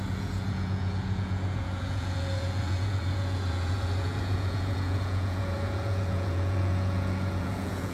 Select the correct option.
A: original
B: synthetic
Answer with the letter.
B